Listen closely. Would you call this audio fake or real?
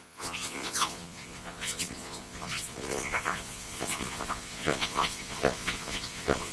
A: fake